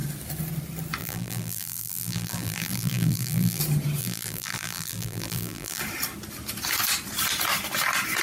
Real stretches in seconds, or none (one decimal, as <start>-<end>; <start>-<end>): 0.0-1.0; 3.6-4.0; 5.8-8.2